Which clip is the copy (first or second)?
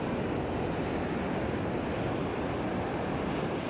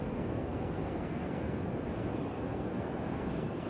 second